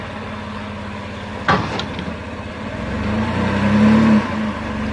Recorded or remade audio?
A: recorded